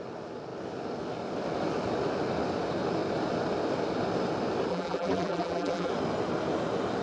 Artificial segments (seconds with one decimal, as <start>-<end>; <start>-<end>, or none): 4.7-5.9